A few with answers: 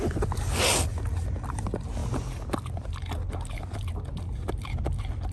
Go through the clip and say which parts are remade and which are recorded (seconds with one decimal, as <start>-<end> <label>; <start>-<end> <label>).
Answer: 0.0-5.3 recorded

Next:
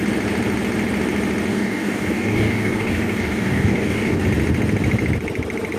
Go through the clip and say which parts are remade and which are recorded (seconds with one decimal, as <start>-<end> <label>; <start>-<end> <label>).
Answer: 0.0-1.5 recorded; 1.5-4.2 remade; 4.2-5.8 recorded

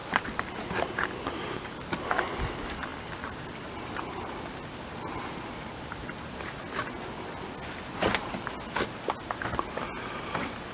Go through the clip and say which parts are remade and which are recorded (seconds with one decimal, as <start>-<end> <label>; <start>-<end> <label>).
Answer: 0.0-2.9 remade; 2.9-4.0 recorded; 4.0-6.0 remade; 6.0-10.7 recorded